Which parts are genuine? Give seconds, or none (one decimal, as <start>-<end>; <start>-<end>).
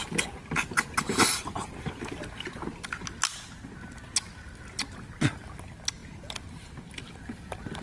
0.0-7.8